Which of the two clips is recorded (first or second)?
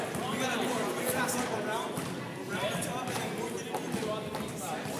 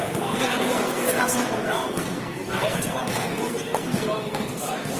first